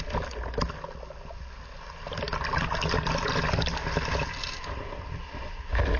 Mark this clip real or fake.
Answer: real